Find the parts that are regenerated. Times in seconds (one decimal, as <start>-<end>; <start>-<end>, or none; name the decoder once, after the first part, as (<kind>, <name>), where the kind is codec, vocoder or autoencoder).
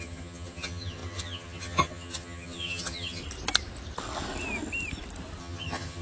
0.0-3.2 (vocoder, HiFi-GAN); 5.4-6.0